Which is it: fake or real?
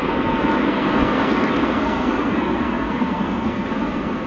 fake